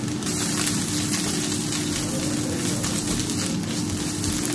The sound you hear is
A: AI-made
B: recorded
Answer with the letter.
B